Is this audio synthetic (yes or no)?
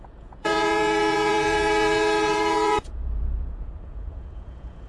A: yes